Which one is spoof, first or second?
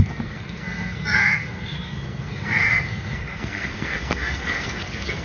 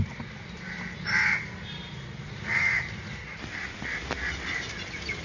first